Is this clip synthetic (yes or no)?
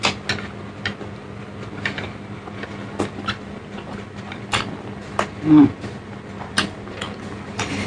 no